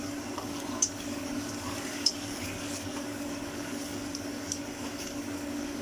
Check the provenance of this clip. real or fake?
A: fake